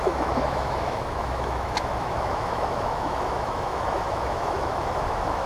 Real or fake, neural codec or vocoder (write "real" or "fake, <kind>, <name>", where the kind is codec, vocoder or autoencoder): fake, autoencoder, DAC-VAE